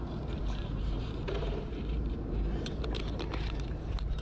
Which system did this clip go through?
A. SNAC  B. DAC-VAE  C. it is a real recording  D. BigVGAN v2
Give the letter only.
D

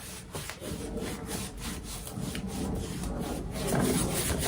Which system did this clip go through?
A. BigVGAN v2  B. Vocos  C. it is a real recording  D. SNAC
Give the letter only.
C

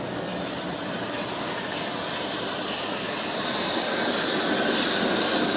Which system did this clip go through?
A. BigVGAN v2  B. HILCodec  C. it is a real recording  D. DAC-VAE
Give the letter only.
C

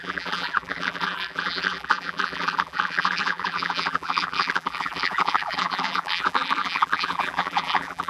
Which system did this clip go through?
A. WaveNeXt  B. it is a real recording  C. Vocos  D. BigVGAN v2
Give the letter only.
D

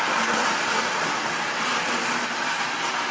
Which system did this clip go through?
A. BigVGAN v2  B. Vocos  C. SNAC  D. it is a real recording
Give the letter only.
D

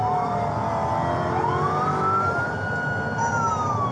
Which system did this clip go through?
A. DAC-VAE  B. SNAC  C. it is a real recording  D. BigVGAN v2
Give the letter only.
C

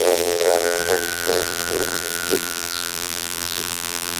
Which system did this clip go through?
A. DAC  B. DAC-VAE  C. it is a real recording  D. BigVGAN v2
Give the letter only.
D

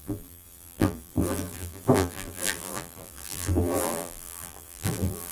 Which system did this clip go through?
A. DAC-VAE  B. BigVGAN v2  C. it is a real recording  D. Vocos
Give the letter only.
B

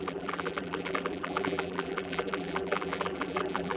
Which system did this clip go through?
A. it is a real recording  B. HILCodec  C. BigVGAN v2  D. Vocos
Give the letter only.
C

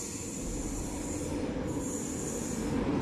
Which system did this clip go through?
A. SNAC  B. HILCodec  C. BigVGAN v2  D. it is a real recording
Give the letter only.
D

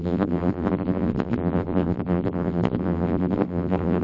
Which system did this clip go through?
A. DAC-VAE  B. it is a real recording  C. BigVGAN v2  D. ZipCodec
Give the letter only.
C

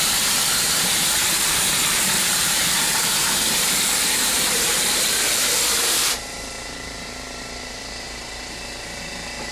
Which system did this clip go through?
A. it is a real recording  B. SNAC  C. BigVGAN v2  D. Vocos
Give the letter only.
C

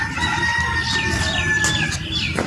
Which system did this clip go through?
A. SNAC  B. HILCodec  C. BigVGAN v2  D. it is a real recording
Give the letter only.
D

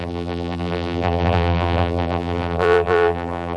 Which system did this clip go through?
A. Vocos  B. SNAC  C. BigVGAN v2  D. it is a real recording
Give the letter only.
C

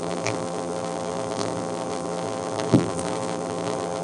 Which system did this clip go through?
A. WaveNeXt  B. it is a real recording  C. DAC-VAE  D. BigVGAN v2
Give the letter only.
D